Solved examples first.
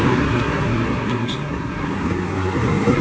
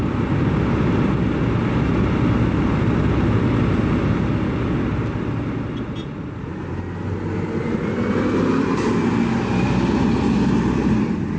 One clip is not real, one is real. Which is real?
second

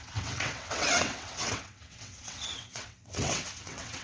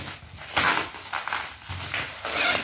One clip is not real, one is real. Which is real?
second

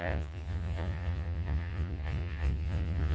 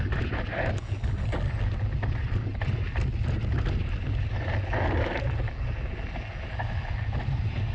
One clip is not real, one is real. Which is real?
second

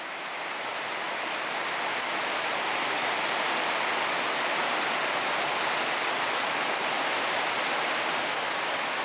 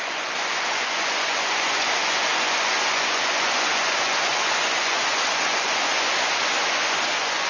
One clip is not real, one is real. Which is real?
first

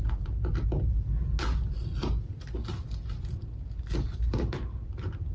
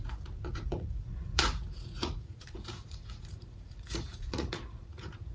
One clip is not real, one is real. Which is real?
first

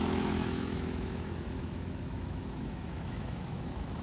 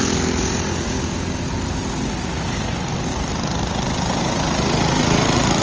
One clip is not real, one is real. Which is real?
second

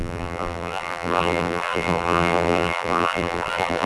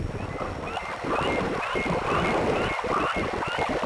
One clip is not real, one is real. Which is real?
second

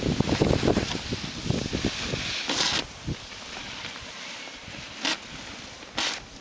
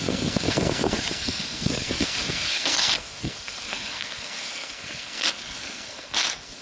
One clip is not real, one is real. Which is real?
first